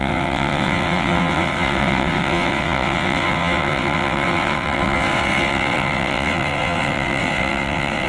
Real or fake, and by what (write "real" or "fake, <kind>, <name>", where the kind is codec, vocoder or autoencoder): fake, vocoder, WaveNeXt